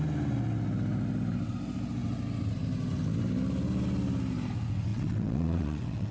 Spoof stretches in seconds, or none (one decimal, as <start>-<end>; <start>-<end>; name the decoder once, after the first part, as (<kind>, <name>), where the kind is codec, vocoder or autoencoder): 4.9-6.1 (vocoder, WaveNeXt)